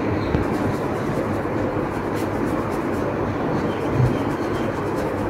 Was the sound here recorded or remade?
remade